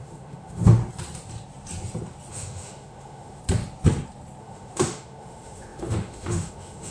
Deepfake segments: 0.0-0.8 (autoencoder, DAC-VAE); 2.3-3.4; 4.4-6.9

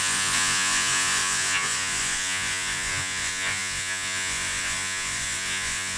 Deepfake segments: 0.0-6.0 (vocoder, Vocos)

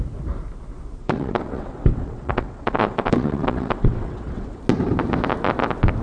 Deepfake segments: 1.0-4.6 (vocoder, WaveNeXt)